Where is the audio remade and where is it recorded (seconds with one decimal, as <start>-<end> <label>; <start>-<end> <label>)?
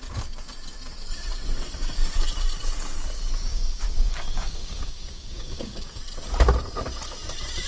0.0-3.4 recorded; 3.4-6.0 remade; 6.0-7.7 recorded